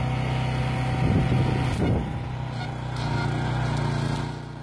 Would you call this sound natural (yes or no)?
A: yes